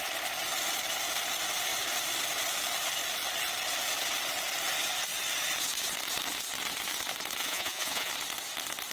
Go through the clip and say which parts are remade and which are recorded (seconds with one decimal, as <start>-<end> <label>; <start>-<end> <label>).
0.0-7.4 recorded; 7.4-8.1 remade; 8.1-8.9 recorded